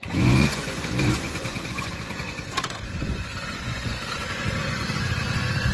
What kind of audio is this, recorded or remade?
remade